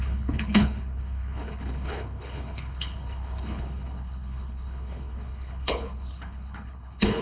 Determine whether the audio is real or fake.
fake